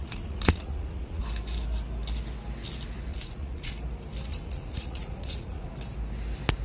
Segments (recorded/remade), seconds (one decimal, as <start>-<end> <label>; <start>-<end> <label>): 0.0-1.2 remade; 1.2-3.1 recorded; 3.1-3.7 remade; 3.7-4.3 recorded; 4.3-5.7 remade; 5.7-6.6 recorded